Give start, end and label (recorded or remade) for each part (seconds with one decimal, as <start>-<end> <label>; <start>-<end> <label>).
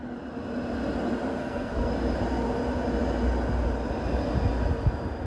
0.0-1.3 recorded; 1.3-1.9 remade; 1.9-5.3 recorded